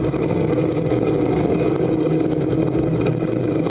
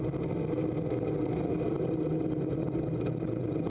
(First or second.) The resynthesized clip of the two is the first